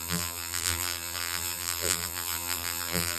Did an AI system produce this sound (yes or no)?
yes